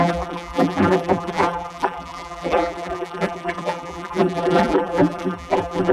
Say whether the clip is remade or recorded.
remade